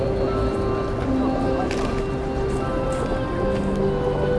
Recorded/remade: recorded